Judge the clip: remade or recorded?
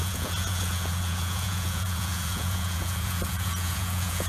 remade